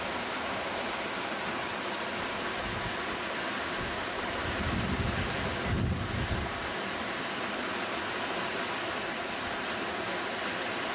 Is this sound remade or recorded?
recorded